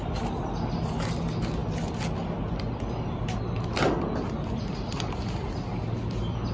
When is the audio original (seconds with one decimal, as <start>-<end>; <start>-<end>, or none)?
0.0-6.5